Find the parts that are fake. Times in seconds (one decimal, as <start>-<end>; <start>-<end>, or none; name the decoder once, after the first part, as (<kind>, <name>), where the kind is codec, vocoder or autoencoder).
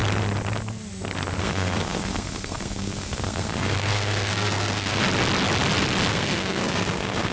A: 1.4-5.0 (codec, SNAC); 6.1-7.3